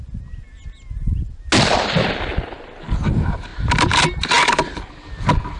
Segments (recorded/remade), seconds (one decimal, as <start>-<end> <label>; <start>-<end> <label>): 0.0-5.6 recorded